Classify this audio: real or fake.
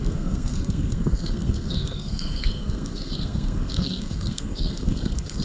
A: fake